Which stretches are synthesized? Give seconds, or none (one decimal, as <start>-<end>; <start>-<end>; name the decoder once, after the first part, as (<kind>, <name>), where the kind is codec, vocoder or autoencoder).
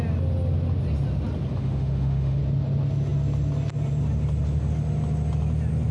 1.6-2.4 (autoencoder, DAC-VAE)